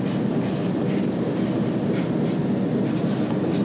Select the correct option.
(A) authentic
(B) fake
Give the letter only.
A